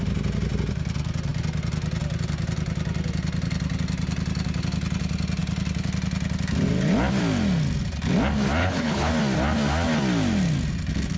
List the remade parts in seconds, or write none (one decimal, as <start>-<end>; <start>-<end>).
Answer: 8.6-9.1